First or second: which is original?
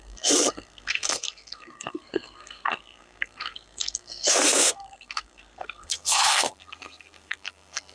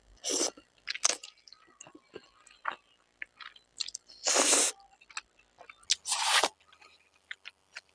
second